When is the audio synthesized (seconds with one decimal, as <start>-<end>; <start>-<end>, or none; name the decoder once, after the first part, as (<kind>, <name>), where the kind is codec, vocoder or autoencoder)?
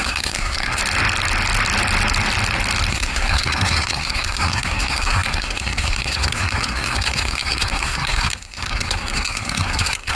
0.0-0.8 (codec, SNAC); 2.9-10.2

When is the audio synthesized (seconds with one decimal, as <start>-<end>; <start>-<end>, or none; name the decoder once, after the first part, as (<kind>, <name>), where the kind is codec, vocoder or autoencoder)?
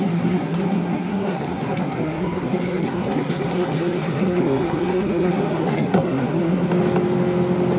0.0-6.7 (codec, SNAC)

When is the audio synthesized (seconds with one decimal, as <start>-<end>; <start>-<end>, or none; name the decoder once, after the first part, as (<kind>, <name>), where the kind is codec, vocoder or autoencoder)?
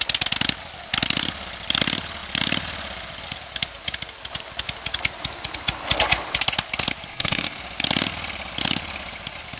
7.1-7.6 (codec, SNAC)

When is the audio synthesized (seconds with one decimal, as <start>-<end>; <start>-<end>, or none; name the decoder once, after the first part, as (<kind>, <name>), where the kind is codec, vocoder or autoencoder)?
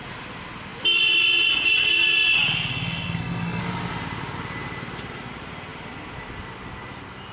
2.7-3.6 (codec, SNAC)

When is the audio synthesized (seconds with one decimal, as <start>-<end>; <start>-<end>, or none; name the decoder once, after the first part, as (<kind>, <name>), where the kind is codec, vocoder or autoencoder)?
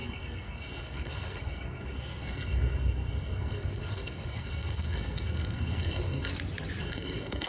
0.0-6.3 (codec, SNAC); 6.8-7.5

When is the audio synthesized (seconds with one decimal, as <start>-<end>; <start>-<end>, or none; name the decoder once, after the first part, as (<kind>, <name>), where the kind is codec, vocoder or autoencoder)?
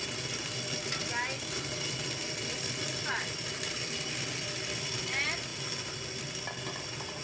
none